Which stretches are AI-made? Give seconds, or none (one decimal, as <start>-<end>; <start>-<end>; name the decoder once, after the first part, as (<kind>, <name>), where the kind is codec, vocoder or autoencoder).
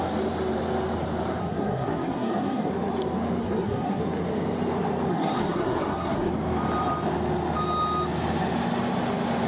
1.4-2.7 (codec, SNAC); 3.4-4.0; 5.1-6.3